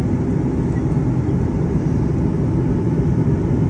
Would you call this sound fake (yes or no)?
no